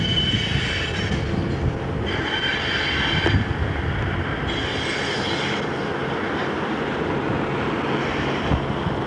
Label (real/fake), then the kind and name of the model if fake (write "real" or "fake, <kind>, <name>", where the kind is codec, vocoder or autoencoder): real